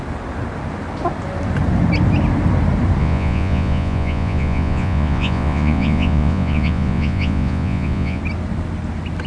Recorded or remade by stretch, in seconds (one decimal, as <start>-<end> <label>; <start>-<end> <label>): 0.0-3.0 recorded; 3.0-8.2 remade; 8.2-9.3 recorded